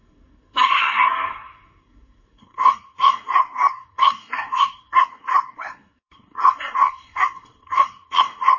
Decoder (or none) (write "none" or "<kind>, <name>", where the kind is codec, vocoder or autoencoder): codec, SNAC